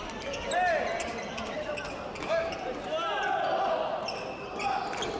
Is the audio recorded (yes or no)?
yes